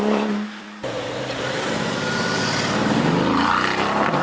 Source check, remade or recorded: remade